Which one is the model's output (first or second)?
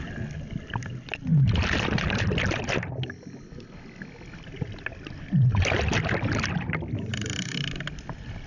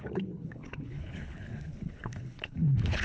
second